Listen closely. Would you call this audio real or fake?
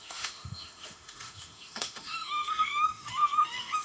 fake